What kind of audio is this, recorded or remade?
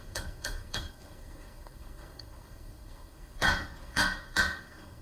remade